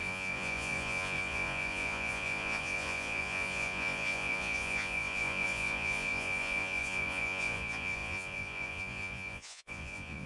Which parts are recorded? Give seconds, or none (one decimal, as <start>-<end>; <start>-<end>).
none